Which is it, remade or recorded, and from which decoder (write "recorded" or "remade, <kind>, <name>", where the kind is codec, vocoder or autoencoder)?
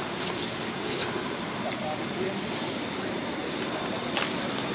recorded